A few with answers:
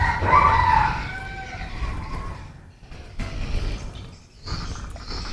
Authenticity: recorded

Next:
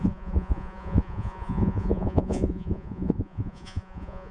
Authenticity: remade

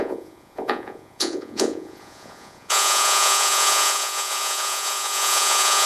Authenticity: remade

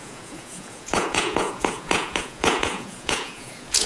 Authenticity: remade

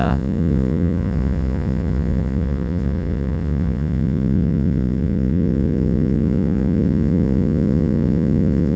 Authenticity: remade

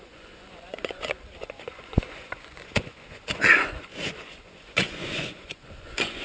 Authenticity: remade